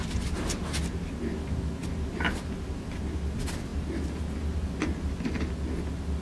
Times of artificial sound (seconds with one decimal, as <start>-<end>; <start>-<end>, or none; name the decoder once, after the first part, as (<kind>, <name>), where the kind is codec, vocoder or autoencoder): none